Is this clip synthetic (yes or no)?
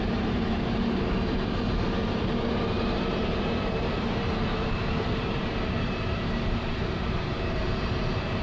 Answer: yes